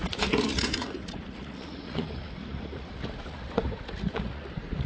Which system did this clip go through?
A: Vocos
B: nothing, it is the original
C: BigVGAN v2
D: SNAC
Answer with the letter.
A